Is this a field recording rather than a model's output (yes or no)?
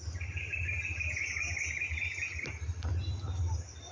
yes